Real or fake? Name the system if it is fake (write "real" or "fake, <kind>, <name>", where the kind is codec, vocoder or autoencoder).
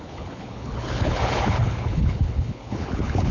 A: fake, codec, HILCodec